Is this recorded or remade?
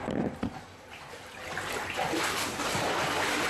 recorded